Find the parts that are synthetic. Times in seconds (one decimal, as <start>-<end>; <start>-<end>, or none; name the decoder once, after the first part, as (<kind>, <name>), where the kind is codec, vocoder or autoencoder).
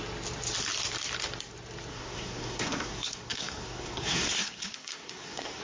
1.9-5.6 (codec, SNAC)